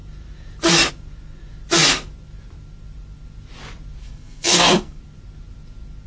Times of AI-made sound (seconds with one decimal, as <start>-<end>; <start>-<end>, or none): 4.0-5.0